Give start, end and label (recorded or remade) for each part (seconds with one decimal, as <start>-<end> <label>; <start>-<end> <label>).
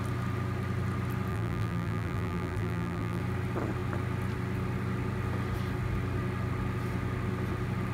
0.0-1.3 recorded; 1.3-3.2 remade; 3.2-7.9 recorded